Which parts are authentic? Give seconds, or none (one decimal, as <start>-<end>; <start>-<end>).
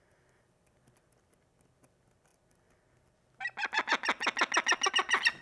0.0-5.4